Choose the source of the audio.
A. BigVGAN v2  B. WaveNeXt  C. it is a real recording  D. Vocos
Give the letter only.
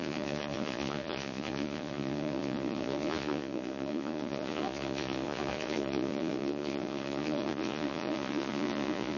D